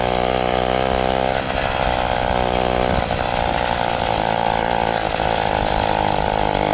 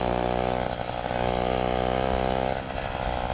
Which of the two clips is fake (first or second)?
first